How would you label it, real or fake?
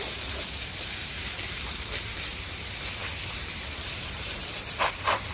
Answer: fake